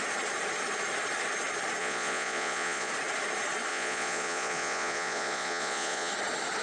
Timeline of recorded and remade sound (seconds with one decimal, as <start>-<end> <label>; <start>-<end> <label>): 0.0-1.8 recorded; 1.8-2.9 remade; 2.9-3.7 recorded; 3.7-6.1 remade; 6.1-6.6 recorded